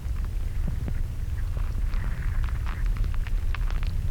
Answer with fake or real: real